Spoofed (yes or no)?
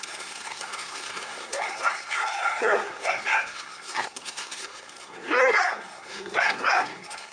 yes